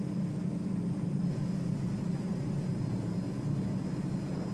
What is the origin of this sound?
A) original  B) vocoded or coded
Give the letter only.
A